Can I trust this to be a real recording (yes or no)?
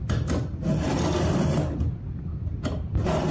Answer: yes